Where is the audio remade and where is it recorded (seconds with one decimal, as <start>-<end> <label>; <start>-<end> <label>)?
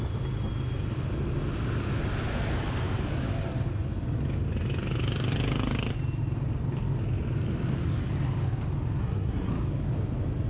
0.0-9.0 recorded; 9.0-9.5 remade; 9.5-10.5 recorded